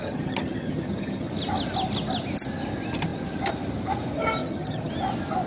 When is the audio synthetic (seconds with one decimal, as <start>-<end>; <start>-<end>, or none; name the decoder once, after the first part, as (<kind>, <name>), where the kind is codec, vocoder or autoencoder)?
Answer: 0.0-1.3 (vocoder, HiFi-GAN); 4.4-4.9